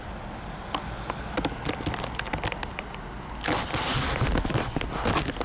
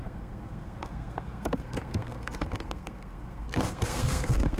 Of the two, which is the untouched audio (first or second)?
first